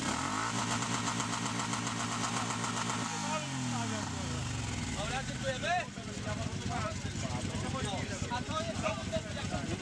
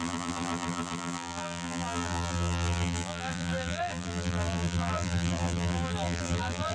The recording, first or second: first